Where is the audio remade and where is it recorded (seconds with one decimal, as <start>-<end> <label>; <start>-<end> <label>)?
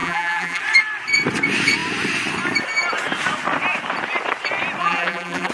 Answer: 0.0-0.6 remade; 0.6-4.8 recorded; 4.8-5.5 remade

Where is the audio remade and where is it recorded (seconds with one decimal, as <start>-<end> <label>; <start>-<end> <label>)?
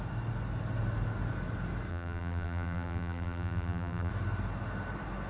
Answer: 0.0-1.9 recorded; 1.9-4.1 remade; 4.1-5.3 recorded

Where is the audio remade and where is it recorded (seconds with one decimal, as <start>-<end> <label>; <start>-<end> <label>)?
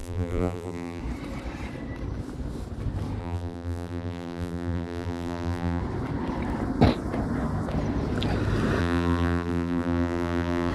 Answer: 0.0-1.0 remade; 1.0-3.2 recorded; 3.2-5.8 remade; 5.8-8.8 recorded; 8.8-10.7 remade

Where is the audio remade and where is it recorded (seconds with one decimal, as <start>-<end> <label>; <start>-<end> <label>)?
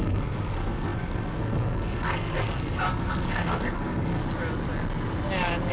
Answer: 0.0-4.2 remade; 4.2-5.7 recorded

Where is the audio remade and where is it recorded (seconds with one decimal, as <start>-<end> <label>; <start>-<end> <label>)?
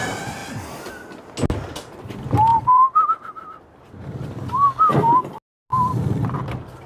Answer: 0.0-0.4 recorded; 0.4-0.9 remade; 0.9-2.5 recorded; 2.5-4.3 remade; 4.3-5.7 recorded; 5.7-6.9 remade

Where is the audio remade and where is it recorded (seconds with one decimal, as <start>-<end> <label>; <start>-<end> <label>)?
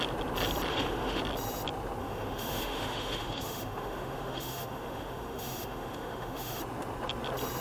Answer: 0.0-0.7 recorded; 0.7-1.2 remade; 1.2-2.0 recorded; 2.0-6.6 remade; 6.6-7.6 recorded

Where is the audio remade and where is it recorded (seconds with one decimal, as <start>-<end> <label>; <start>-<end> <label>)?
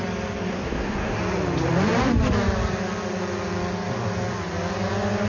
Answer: 0.0-0.5 recorded; 0.5-1.2 remade; 1.2-5.3 recorded